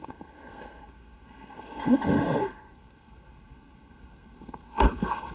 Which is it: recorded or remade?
remade